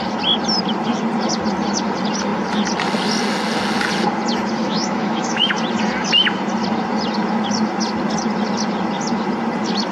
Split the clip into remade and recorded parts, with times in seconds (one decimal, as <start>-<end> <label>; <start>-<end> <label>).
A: 0.0-4.6 recorded; 4.6-5.5 remade; 5.5-9.9 recorded